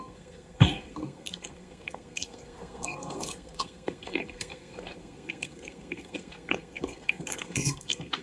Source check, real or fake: fake